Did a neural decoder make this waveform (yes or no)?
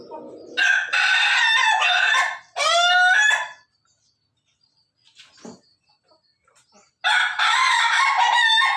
no